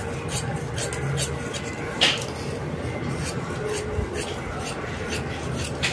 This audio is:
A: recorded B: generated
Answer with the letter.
A